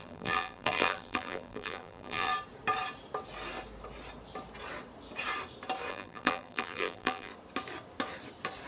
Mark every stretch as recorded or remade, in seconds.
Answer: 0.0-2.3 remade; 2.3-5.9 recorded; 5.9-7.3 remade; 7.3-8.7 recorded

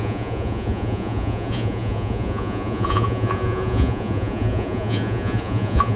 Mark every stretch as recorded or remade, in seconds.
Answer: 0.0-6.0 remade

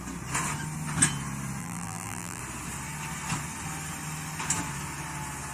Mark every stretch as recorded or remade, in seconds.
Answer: 0.0-1.6 recorded; 1.6-2.4 remade; 2.4-5.5 recorded

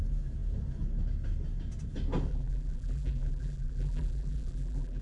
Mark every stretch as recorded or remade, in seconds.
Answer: 0.0-2.3 recorded; 2.3-5.0 remade